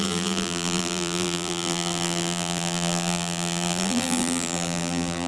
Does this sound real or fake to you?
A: fake